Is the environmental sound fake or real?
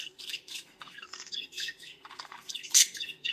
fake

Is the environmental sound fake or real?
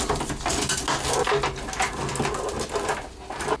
real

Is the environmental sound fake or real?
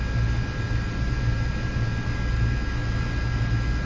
real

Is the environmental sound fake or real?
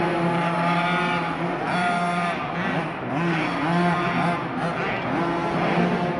real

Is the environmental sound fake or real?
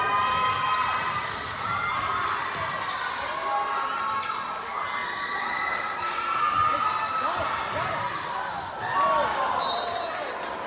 real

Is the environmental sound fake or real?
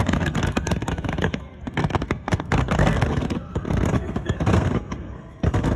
fake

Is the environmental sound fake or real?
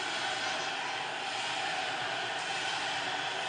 real